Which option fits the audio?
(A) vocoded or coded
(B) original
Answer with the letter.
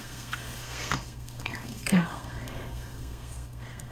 A